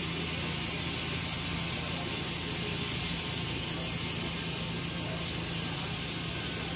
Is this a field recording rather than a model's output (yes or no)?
yes